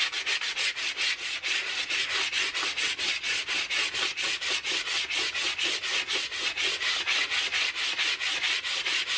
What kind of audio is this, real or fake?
real